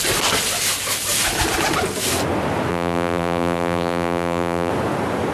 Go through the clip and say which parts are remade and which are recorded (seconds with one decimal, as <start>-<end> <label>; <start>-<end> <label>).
0.0-2.7 recorded; 2.7-4.7 remade; 4.7-5.3 recorded